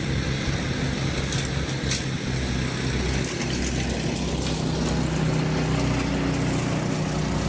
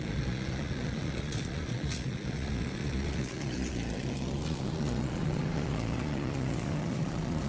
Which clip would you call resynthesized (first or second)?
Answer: second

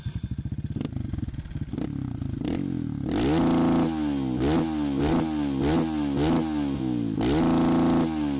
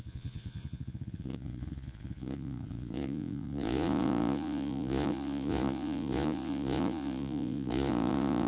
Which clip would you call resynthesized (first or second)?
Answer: second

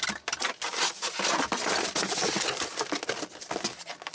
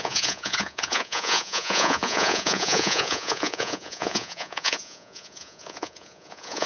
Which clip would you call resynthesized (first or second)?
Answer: second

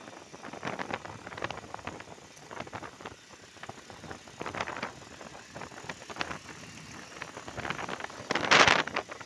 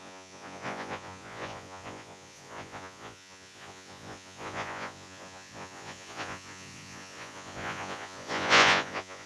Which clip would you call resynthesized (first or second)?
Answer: second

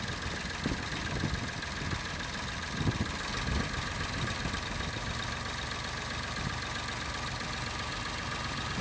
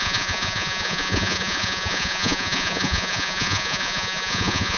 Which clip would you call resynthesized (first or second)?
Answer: second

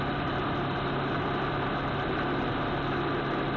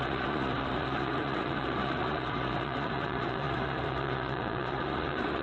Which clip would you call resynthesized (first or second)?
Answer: second